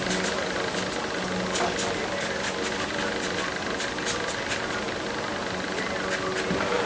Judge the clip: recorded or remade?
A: recorded